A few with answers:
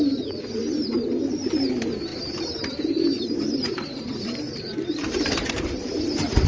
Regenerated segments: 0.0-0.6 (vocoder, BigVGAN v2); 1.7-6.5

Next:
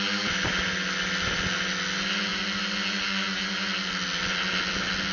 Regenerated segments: none

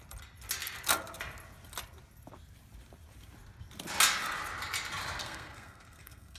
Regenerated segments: 5.2-6.4 (codec, SNAC)

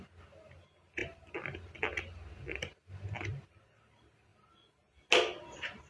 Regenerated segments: none

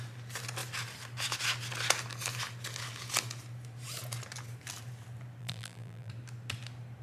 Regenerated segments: 5.4-6.1 (vocoder, BigVGAN v2)

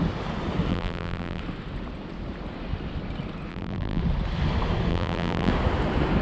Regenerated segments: 0.7-1.4 (vocoder, BigVGAN v2); 3.5-4.0; 4.9-5.5